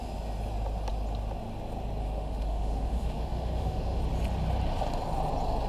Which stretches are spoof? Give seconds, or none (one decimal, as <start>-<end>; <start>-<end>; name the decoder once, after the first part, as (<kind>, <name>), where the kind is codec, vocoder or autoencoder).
2.0-4.0 (autoencoder, DAC-VAE)